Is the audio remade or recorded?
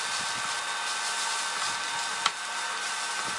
recorded